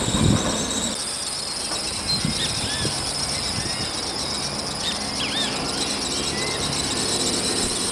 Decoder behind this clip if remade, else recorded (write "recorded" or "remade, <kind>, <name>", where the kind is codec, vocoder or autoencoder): recorded